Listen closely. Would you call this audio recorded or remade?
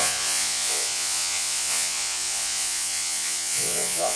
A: remade